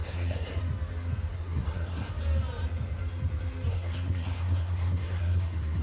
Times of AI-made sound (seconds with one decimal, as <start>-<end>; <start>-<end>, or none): 0.0-0.6; 1.3-2.1; 3.7-5.8